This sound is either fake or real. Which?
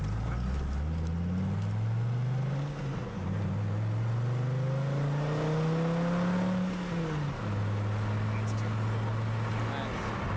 real